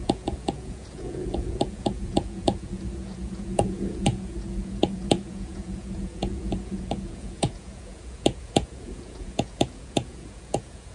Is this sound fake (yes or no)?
yes